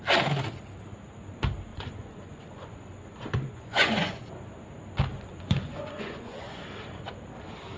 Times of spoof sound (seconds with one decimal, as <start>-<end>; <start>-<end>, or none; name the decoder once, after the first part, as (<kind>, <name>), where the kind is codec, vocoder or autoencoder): 1.7-4.2 (vocoder, Vocos); 5.1-6.6